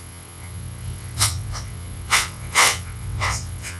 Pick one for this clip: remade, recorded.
remade